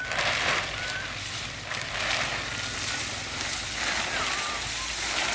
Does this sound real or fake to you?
real